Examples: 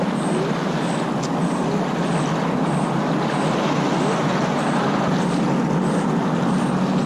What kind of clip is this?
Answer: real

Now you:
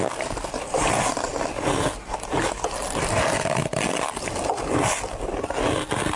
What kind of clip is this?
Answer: real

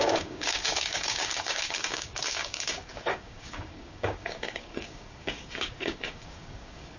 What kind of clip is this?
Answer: fake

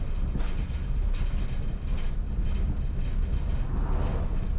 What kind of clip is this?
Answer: real